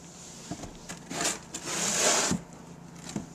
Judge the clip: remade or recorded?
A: recorded